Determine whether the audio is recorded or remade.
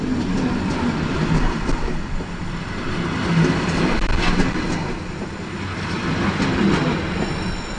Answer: recorded